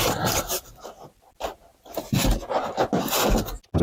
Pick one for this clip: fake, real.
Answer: real